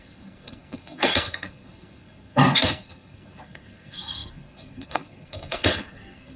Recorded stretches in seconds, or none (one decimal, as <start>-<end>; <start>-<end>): none